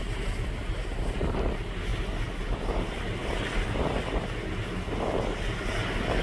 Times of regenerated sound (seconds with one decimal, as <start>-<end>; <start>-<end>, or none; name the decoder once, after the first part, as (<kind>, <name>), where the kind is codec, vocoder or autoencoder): 3.2-4.0 (vocoder, BigVGAN v2)